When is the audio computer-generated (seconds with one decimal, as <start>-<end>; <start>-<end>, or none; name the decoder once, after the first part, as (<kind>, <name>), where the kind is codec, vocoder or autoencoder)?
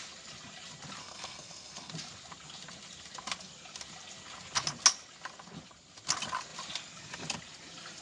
1.0-1.9 (codec, SNAC)